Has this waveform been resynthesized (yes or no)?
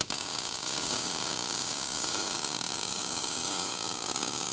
yes